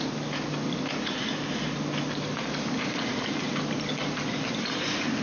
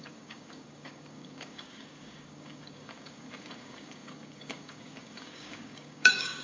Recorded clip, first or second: first